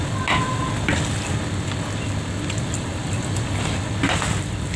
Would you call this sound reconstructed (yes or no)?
no